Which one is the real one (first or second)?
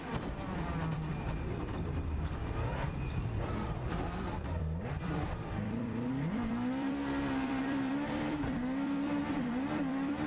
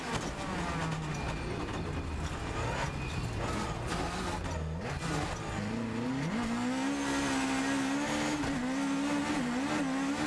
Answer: second